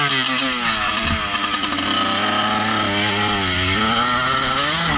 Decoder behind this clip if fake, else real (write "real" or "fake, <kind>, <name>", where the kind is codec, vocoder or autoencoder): real